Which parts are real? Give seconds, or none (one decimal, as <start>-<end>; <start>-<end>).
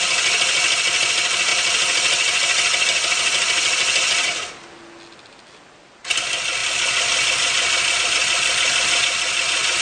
0.0-9.8